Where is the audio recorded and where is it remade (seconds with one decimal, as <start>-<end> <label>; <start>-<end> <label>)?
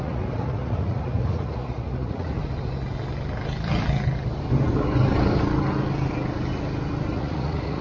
0.0-2.4 remade; 2.4-7.1 recorded; 7.1-7.8 remade